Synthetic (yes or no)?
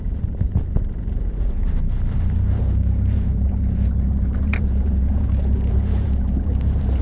yes